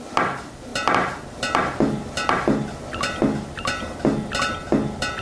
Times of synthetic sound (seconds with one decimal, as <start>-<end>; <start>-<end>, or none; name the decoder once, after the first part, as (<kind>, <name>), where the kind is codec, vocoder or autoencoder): none

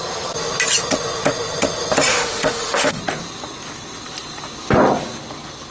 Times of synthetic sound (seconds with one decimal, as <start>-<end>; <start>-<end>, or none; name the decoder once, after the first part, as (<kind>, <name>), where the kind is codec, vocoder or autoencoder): 2.1-3.0 (autoencoder, DAC-VAE)

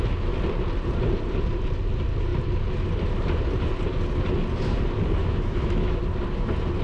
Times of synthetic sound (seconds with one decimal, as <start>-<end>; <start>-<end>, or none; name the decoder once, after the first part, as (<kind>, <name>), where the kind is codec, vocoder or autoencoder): 5.2-6.0 (autoencoder, DAC-VAE)

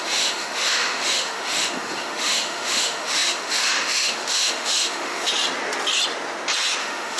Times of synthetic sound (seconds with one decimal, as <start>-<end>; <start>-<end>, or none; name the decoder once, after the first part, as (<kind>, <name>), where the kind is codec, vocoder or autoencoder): 0.0-5.3 (autoencoder, DAC-VAE); 6.8-7.2

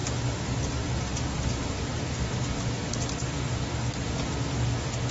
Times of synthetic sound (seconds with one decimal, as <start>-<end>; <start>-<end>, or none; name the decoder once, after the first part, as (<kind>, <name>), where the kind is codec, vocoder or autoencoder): none

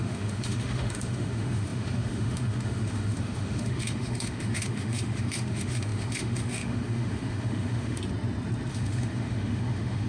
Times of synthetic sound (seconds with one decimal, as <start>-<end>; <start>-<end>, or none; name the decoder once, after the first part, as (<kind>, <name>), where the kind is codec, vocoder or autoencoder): 0.0-8.0 (autoencoder, DAC-VAE); 8.7-10.1